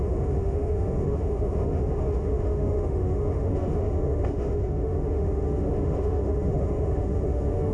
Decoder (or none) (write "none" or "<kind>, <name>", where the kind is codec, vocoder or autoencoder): autoencoder, DAC-VAE